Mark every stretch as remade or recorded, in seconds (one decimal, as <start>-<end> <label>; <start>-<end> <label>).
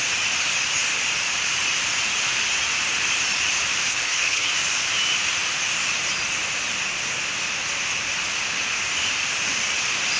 0.0-3.9 recorded; 3.9-4.5 remade; 4.5-10.2 recorded